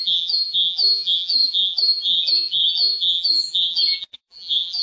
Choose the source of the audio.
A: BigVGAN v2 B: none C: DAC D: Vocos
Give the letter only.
A